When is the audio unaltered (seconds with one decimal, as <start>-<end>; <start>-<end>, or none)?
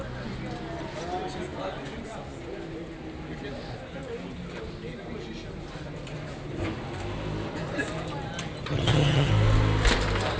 0.0-8.7; 9.3-10.4